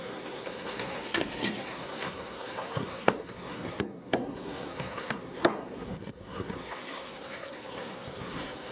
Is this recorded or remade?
remade